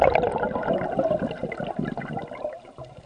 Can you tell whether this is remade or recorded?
recorded